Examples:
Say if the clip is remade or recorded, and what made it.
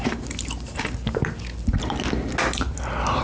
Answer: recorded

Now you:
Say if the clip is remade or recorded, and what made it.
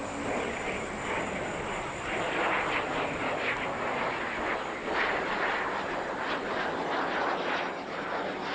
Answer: recorded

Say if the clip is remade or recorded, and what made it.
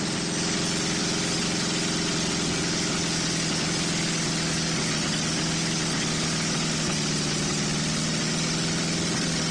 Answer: recorded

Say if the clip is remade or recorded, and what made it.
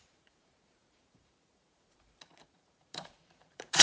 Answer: remade, vocoder, Vocos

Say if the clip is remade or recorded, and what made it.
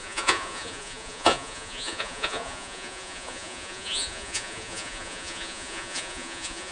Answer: remade, vocoder, Vocos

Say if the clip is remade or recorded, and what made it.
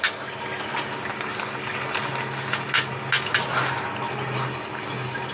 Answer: recorded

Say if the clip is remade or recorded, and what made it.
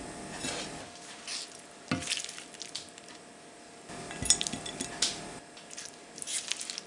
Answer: recorded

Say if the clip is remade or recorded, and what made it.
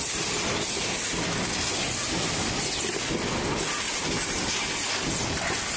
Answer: recorded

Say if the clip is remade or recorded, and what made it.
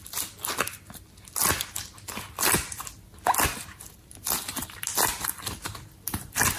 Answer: recorded